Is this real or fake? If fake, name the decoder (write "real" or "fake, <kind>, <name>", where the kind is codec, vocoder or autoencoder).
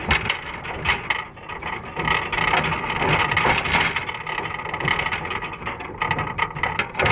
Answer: real